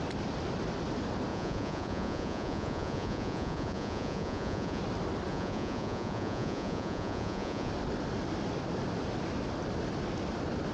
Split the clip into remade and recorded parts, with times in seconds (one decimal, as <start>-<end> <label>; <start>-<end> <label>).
0.0-1.3 recorded; 1.3-4.8 remade; 4.8-5.3 recorded; 5.3-7.7 remade; 7.7-10.7 recorded

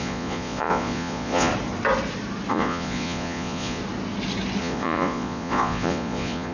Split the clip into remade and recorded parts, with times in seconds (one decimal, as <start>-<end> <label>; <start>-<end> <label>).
0.0-1.5 remade; 1.5-2.5 recorded; 2.5-3.8 remade; 3.8-4.6 recorded; 4.6-6.5 remade